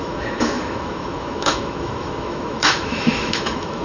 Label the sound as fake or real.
fake